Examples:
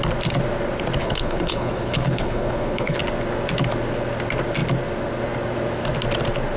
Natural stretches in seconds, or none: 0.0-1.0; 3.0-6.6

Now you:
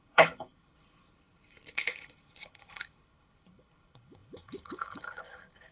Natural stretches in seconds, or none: none

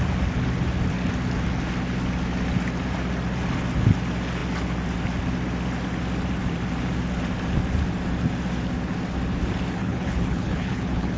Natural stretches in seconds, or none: 0.0-9.8

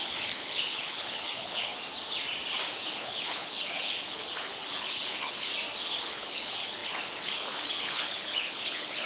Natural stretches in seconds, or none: 1.7-2.8; 5.5-6.0

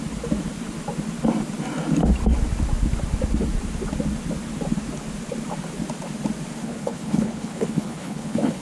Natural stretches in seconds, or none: 0.0-6.6

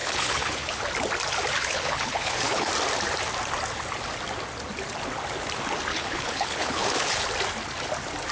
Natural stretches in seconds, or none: 0.8-1.6; 2.7-5.9; 7.3-8.3